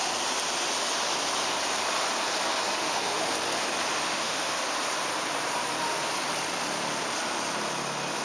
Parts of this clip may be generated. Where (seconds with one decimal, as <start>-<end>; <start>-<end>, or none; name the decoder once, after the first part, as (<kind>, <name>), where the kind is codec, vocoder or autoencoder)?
2.8-3.3 (autoencoder, DAC-VAE); 4.1-4.6